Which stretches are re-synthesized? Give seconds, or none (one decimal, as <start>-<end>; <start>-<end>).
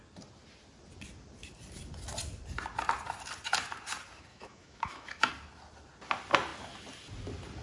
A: 4.3-5.3